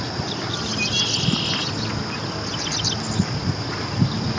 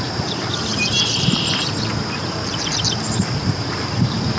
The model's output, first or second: second